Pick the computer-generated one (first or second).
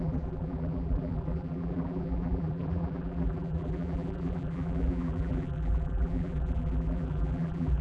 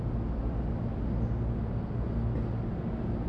first